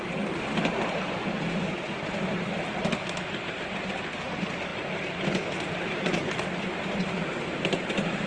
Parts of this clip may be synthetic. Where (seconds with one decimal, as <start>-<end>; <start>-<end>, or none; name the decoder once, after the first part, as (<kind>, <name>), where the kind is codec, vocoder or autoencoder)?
none